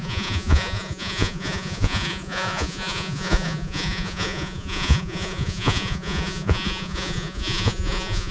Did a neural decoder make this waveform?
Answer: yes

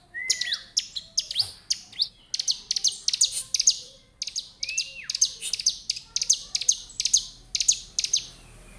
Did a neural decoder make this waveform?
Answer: no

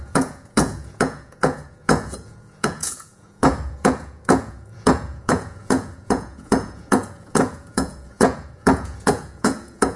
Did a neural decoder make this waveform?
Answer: yes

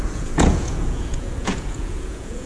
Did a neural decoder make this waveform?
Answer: yes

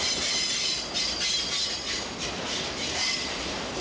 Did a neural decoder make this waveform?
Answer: no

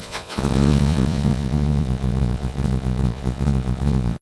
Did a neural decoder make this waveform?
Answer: yes